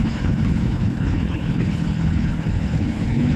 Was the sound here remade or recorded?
remade